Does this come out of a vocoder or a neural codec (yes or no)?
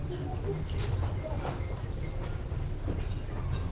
no